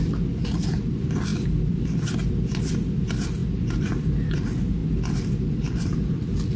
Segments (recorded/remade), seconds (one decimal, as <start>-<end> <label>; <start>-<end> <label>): 0.0-1.3 recorded; 1.3-2.7 remade; 2.7-6.6 recorded